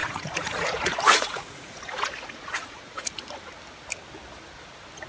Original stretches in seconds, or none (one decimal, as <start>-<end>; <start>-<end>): 3.1-5.1